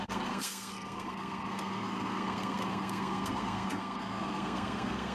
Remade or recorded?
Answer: remade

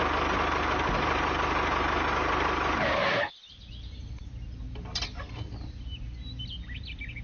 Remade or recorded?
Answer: recorded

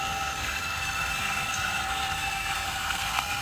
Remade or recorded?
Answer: remade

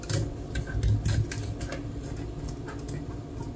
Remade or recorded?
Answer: recorded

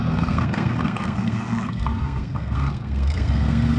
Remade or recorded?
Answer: remade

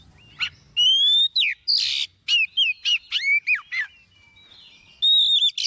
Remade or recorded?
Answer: recorded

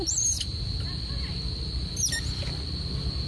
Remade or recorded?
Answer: recorded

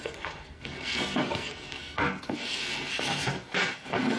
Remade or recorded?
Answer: remade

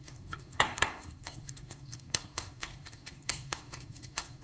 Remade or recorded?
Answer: remade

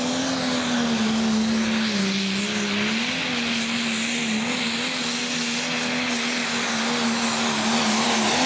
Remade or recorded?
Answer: recorded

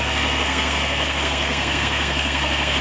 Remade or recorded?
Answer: remade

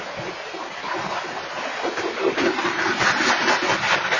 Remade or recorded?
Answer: recorded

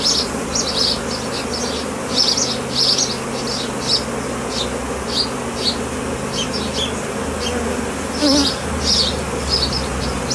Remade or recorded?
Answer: recorded